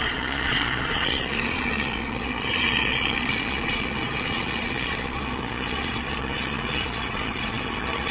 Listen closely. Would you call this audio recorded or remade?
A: remade